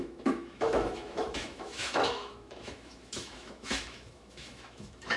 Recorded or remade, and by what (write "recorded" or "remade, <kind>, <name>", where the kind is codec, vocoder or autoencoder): remade, autoencoder, DAC-VAE